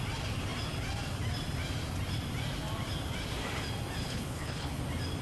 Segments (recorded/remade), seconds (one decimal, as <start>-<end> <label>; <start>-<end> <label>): 0.0-4.0 recorded; 4.0-4.8 remade; 4.8-5.2 recorded